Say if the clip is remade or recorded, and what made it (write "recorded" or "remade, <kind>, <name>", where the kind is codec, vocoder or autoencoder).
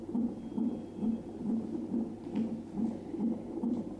recorded